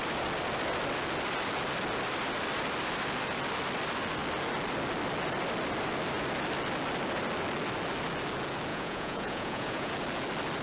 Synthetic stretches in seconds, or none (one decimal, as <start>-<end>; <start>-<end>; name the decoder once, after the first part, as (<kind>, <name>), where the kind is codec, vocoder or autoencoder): 8.7-9.9 (vocoder, Vocos)